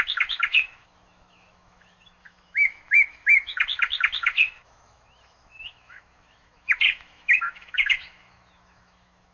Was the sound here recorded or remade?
remade